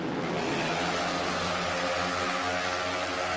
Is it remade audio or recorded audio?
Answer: recorded